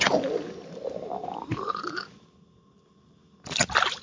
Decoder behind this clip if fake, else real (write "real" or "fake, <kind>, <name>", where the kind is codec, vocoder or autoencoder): real